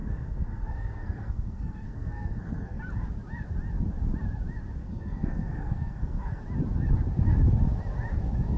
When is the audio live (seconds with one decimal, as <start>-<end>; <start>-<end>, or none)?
2.8-4.8; 6.4-8.6